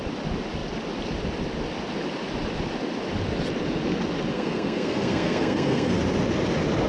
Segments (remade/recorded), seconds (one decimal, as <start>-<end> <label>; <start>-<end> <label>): 0.0-4.3 recorded; 4.3-6.0 remade; 6.0-6.9 recorded